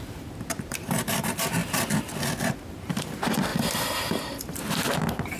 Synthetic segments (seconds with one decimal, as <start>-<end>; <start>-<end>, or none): 0.0-1.6; 2.8-5.4